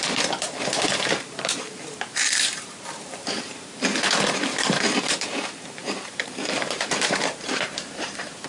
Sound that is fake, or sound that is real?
fake